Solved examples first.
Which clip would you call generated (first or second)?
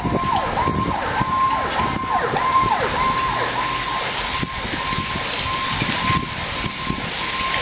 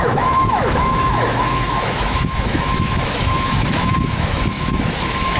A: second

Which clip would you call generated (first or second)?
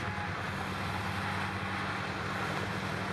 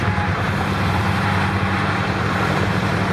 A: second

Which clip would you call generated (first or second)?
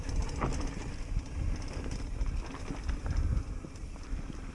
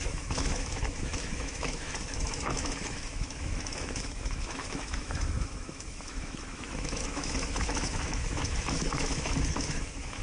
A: second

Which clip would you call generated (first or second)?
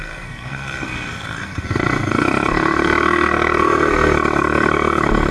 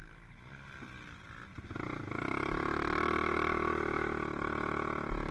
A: first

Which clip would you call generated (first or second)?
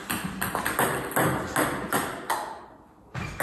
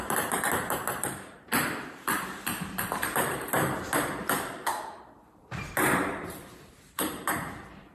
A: second